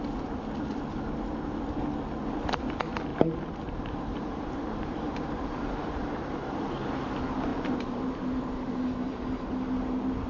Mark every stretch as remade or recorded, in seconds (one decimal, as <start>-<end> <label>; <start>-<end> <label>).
0.0-3.1 recorded; 3.1-6.6 remade; 6.6-10.3 recorded